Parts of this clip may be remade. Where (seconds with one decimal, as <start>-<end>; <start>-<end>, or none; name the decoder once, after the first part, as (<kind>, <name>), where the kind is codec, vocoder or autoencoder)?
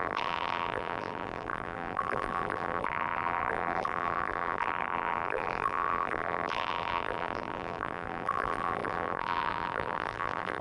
0.0-10.6 (vocoder, BigVGAN v2)